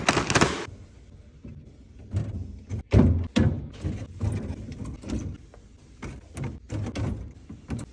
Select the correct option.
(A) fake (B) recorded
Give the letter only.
B